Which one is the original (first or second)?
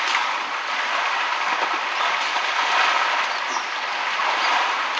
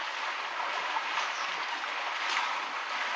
second